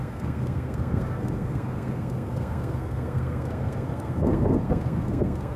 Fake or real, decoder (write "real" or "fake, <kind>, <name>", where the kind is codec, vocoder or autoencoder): fake, codec, SNAC